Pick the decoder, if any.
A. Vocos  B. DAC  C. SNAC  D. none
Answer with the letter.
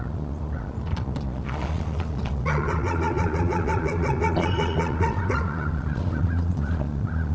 A